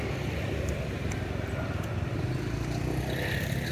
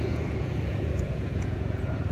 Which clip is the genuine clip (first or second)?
first